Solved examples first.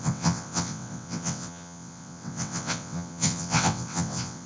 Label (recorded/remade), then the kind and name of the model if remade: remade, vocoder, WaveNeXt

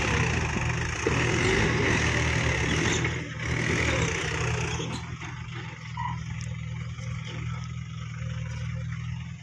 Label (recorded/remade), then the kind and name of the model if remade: recorded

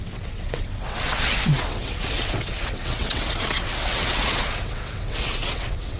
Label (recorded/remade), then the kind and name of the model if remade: remade, vocoder, WaveNeXt